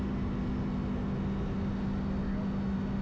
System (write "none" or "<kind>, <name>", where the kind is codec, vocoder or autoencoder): none